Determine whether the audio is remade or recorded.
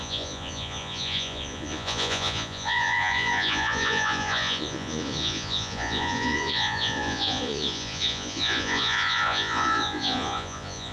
remade